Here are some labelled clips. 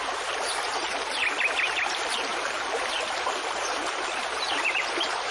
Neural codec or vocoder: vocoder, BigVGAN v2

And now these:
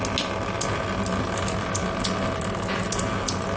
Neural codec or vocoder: none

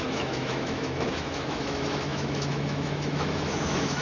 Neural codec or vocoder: autoencoder, DAC-VAE